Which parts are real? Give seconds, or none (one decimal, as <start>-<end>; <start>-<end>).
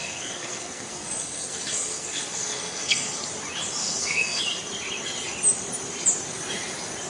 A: 3.2-3.8; 4.4-7.1